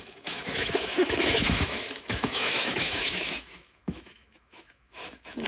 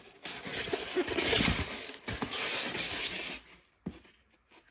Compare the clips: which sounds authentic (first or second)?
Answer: second